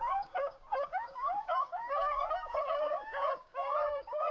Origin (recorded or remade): remade